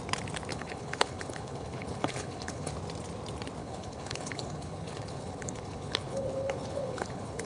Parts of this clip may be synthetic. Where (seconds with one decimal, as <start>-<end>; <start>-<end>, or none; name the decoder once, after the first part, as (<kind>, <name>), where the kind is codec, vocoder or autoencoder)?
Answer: 0.5-2.7 (codec, HILCodec); 3.6-7.5